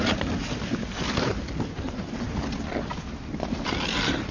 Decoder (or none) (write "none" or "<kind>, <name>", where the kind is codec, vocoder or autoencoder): none